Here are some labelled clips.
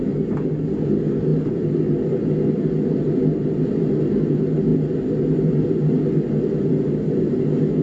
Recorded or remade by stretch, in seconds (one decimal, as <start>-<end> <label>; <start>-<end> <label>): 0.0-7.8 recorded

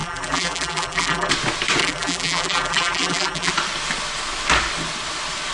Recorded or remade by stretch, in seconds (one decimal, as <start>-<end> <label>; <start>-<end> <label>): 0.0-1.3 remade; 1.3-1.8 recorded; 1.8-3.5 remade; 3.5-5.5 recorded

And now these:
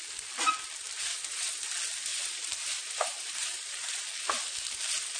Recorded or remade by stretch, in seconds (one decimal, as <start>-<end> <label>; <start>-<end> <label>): 0.0-2.1 recorded; 2.1-4.0 remade; 4.0-5.2 recorded

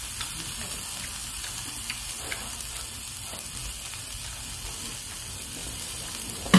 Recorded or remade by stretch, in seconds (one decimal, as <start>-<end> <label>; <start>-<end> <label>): 0.0-1.2 recorded; 1.2-2.1 remade; 2.1-5.6 recorded; 5.6-6.6 remade

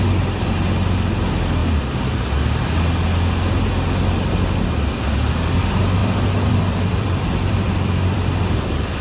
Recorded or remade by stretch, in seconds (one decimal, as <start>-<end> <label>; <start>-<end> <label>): 0.0-6.0 recorded; 6.0-8.6 remade; 8.6-9.0 recorded